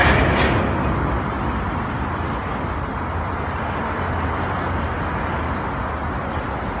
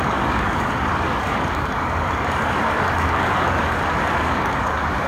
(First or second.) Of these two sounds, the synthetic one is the second